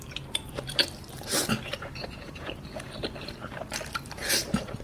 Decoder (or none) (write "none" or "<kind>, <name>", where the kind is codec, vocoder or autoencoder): vocoder, BigVGAN v2